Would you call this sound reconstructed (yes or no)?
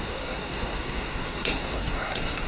yes